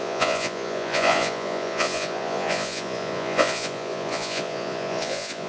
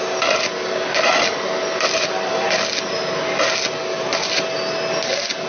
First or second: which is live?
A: second